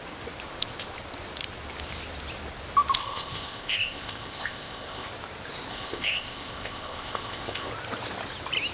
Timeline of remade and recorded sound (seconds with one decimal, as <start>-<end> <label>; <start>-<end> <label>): 0.0-3.0 recorded; 3.0-5.1 remade; 5.1-5.7 recorded; 5.7-7.7 remade; 7.7-8.7 recorded